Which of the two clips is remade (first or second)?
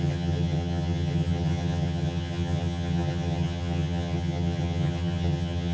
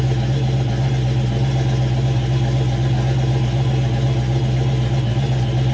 first